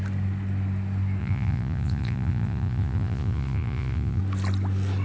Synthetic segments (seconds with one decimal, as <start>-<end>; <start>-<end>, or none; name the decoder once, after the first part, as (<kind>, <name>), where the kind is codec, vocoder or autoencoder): 1.2-4.2 (vocoder, Vocos)